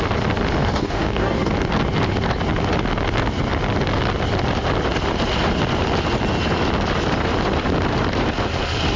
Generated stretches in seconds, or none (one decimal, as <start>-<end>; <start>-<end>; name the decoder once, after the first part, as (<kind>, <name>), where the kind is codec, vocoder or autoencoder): 0.6-1.5 (codec, DAC)